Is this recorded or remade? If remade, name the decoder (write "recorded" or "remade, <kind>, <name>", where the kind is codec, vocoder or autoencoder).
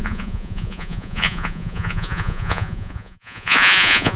remade, vocoder, Vocos